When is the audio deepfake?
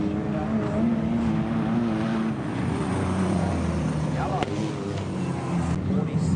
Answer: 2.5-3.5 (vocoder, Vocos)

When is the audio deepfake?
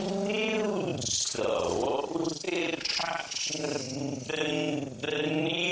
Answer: none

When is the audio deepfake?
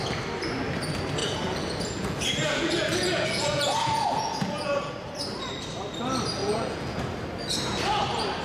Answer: 1.2-4.9 (vocoder, Vocos); 6.4-7.0